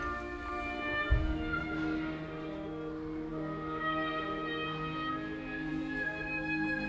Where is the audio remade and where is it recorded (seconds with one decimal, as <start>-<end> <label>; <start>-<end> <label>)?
0.0-6.9 recorded